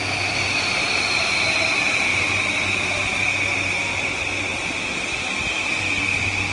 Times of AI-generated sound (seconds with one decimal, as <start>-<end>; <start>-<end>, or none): none